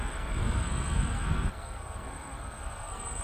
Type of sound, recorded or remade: remade